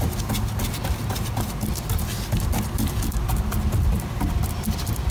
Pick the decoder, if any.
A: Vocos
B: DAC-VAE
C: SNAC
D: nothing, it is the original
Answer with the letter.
D